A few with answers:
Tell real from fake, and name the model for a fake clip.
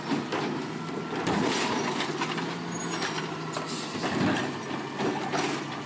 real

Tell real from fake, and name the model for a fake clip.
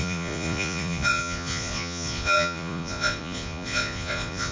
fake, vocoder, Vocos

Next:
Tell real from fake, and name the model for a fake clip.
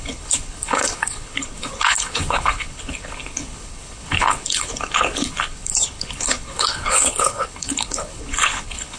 fake, codec, HILCodec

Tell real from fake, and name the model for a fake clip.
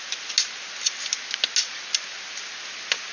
real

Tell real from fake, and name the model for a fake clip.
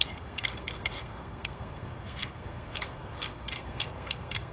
fake, codec, SNAC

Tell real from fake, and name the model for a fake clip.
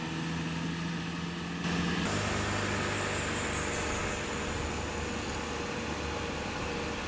real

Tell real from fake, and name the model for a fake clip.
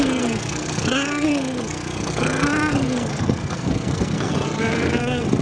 fake, codec, SNAC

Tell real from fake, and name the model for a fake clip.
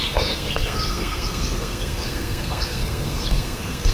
fake, codec, SNAC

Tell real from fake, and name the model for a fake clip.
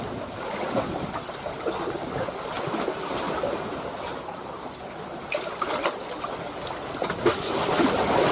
real